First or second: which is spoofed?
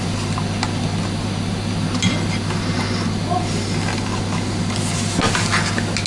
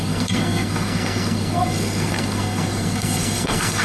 second